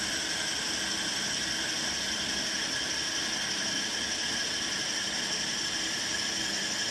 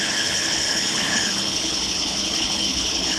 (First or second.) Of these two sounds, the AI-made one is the second